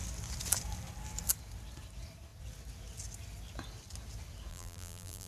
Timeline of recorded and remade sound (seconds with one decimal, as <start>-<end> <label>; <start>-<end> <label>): 0.0-4.5 recorded; 4.5-5.3 remade